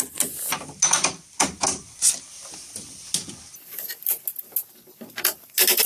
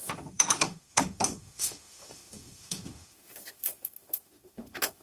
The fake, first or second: second